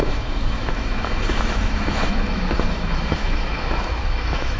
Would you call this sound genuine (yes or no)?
no